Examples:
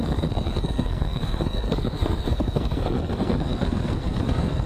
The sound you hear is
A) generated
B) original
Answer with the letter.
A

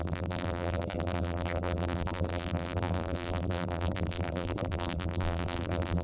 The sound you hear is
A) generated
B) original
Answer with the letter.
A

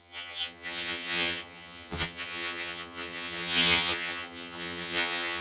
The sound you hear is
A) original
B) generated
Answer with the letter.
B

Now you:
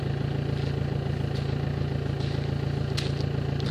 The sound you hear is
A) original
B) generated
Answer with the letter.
A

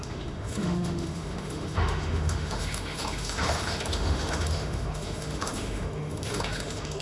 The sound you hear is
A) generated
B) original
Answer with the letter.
A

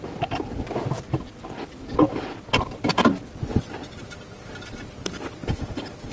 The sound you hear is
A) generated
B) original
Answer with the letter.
B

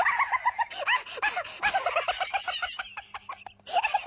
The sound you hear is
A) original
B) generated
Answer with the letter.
A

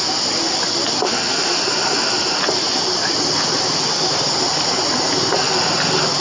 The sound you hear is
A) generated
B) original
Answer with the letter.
B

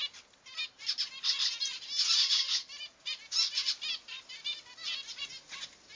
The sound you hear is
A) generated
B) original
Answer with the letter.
B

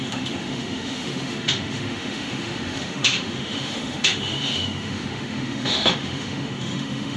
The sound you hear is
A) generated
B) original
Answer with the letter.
A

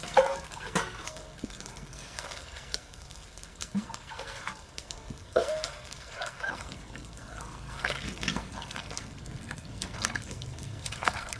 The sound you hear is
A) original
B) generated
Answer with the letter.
B